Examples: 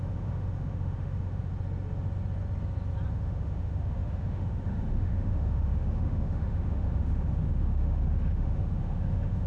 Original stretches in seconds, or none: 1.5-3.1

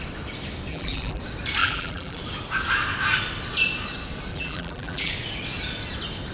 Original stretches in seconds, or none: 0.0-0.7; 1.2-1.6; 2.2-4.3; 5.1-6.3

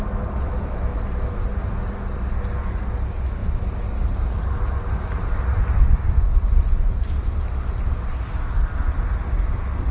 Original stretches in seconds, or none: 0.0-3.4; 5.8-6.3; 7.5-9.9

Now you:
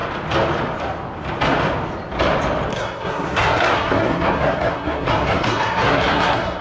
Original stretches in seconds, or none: 0.0-2.7